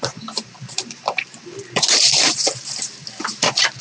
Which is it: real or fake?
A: fake